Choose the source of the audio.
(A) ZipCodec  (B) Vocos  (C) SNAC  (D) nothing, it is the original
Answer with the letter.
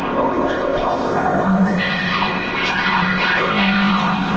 A